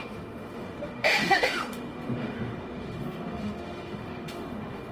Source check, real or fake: fake